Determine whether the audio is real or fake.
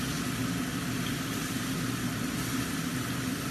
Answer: real